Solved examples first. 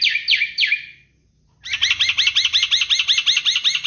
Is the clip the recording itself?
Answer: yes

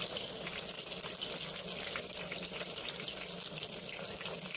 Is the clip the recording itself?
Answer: yes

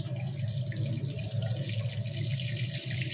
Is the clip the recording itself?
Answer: yes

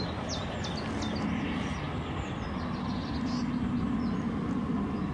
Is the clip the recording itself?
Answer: yes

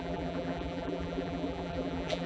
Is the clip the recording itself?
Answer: no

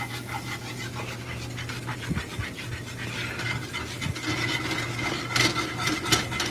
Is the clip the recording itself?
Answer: yes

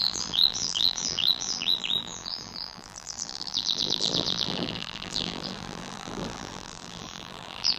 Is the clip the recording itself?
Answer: no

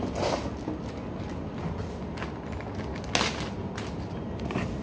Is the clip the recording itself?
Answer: yes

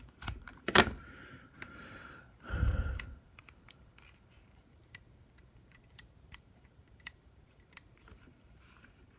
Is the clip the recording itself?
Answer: no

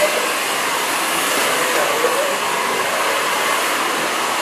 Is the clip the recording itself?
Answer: yes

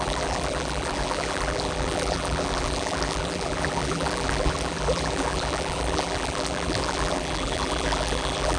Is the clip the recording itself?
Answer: no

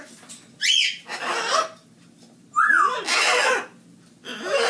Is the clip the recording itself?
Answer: yes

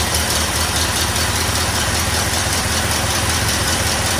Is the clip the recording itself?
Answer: no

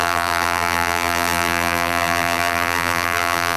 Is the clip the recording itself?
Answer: no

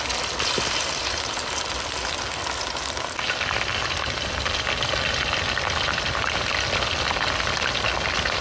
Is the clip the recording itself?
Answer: yes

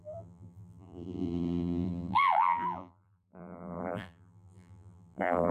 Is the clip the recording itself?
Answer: no